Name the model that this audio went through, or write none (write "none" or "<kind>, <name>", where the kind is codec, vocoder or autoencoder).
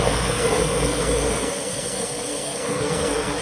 codec, SNAC